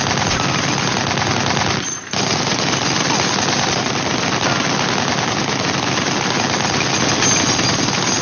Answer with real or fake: real